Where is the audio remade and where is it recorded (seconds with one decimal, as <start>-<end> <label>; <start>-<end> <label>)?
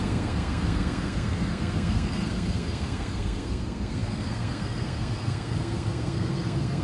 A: 0.0-6.8 remade